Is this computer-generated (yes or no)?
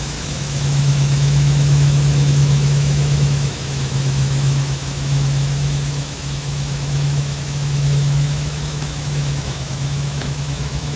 yes